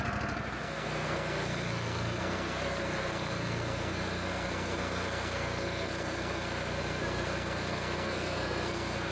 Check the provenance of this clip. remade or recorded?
remade